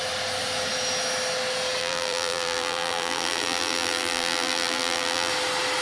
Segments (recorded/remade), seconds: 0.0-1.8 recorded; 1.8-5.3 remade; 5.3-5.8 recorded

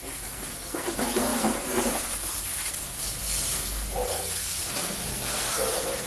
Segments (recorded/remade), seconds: 0.0-6.1 remade